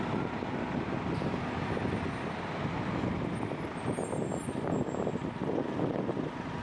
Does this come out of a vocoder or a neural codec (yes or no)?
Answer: no